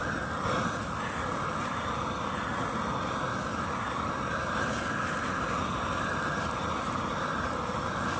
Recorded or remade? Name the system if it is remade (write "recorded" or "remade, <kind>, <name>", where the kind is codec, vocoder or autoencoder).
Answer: recorded